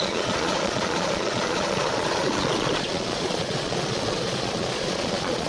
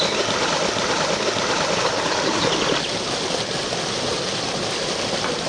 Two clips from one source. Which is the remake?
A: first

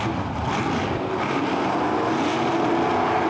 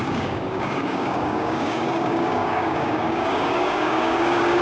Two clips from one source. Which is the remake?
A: second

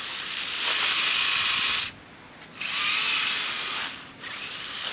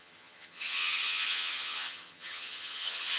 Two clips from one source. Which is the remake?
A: second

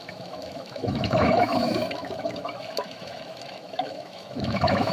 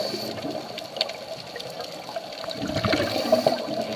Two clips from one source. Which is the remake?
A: first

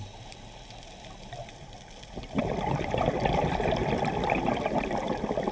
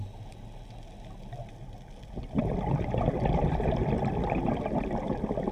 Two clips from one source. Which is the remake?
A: first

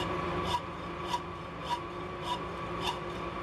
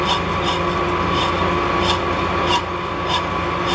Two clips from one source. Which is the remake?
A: first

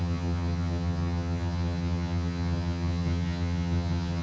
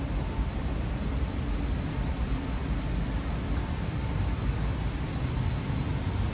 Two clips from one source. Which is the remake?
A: first